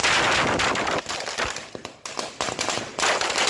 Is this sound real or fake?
real